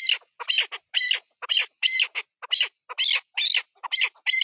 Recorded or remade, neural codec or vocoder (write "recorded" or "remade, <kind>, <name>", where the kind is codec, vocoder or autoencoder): recorded